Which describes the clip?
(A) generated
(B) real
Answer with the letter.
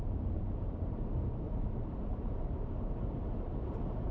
A